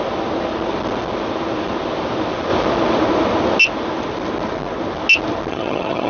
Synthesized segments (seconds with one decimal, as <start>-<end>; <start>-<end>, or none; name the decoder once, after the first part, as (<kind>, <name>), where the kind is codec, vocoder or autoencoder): 5.5-6.1 (vocoder, HiFi-GAN)